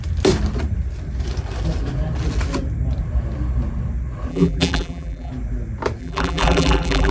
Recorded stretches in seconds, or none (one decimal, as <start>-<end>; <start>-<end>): 0.0-4.3; 5.3-6.0